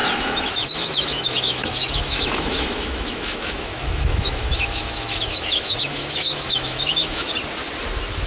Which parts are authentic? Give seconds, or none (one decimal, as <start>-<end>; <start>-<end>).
7.3-8.3